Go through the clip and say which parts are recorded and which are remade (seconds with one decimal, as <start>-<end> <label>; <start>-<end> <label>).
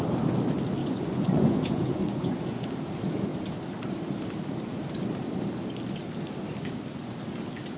0.0-0.8 recorded; 0.8-2.7 remade; 2.7-7.8 recorded